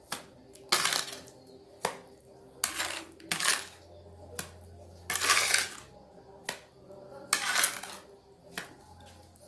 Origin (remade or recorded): recorded